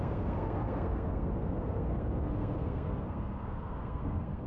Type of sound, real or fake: fake